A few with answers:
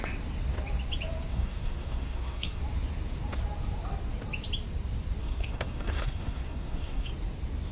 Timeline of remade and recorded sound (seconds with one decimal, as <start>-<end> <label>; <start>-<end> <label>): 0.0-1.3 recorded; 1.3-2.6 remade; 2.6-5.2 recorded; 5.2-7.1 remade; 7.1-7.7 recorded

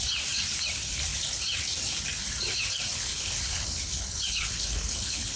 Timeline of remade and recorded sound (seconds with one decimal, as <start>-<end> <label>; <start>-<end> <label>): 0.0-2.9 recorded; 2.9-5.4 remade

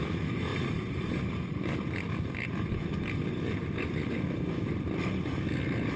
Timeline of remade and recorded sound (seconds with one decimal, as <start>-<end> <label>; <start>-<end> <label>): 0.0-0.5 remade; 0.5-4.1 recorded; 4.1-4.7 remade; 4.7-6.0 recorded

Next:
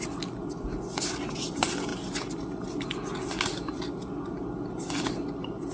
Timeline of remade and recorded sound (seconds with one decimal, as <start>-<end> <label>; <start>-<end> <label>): 0.0-5.7 recorded

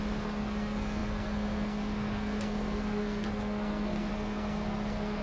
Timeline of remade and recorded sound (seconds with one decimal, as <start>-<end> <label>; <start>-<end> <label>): 0.0-5.2 remade

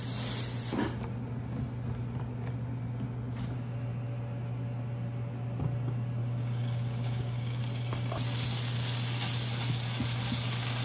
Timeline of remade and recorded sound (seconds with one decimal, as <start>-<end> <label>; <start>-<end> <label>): 0.0-6.2 recorded; 6.2-7.6 remade; 7.6-10.8 recorded

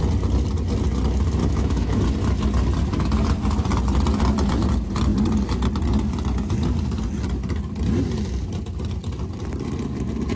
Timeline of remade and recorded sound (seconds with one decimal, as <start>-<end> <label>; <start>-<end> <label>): 0.0-1.4 recorded; 1.4-2.0 remade; 2.0-10.4 recorded

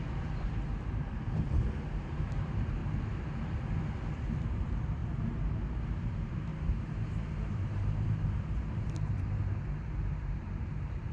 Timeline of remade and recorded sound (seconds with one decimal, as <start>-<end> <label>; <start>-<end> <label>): 0.0-2.8 remade; 2.8-4.5 recorded; 4.5-5.0 remade; 5.0-6.0 recorded; 6.0-11.1 remade